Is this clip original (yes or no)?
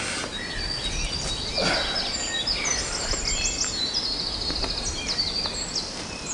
yes